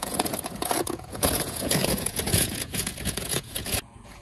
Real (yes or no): no